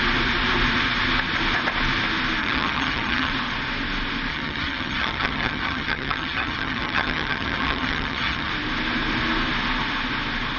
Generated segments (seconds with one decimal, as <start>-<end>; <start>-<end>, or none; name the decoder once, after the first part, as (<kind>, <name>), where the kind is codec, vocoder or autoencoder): 2.4-3.3 (vocoder, HiFi-GAN); 4.3-8.5